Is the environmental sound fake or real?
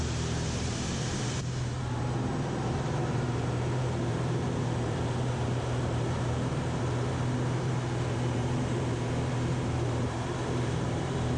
fake